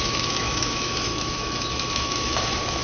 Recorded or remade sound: remade